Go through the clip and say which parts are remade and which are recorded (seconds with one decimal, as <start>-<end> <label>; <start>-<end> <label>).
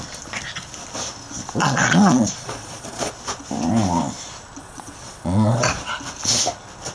0.0-1.6 recorded; 1.6-3.1 remade; 3.1-4.6 recorded; 4.6-5.9 remade; 5.9-6.9 recorded